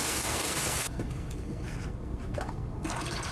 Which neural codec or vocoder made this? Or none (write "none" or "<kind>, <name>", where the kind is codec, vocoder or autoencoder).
codec, SNAC